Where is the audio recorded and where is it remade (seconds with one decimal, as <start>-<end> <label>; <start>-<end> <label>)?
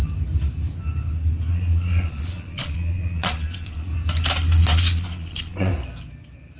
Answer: 0.0-1.5 recorded; 1.5-3.9 remade; 3.9-4.6 recorded; 4.6-5.7 remade; 5.7-6.6 recorded